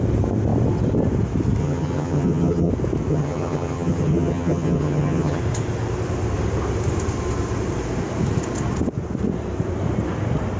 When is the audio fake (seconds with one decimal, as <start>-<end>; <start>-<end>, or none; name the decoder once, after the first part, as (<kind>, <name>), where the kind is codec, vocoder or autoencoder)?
1.6-2.7 (vocoder, HiFi-GAN); 3.1-5.4

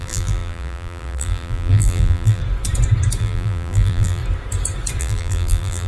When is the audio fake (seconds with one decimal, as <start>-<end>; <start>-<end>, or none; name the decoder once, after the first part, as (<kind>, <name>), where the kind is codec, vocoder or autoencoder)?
0.0-2.4 (vocoder, BigVGAN v2); 3.2-4.2; 5.0-5.9